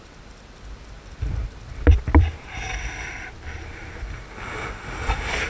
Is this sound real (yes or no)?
yes